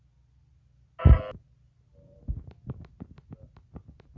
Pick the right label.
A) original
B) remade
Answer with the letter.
A